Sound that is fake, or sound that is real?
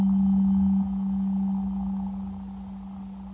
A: real